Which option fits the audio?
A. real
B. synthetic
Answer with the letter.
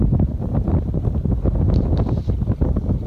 A